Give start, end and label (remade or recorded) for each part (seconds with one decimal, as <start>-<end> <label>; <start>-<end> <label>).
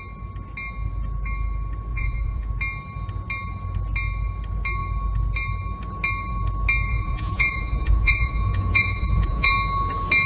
0.0-1.9 recorded; 1.9-2.5 remade; 2.5-6.9 recorded; 6.9-9.5 remade; 9.5-10.3 recorded